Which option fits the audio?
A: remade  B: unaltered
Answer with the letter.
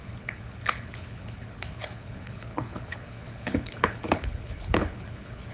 A